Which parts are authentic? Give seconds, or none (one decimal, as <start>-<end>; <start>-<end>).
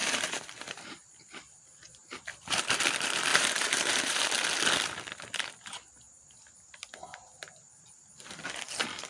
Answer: 1.1-2.0; 2.8-3.3; 4.2-9.1